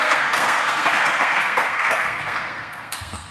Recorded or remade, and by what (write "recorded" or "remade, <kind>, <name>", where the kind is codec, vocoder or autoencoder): remade, codec, SNAC